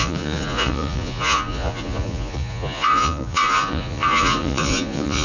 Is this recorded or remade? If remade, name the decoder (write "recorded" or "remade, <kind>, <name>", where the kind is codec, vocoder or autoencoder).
remade, vocoder, Vocos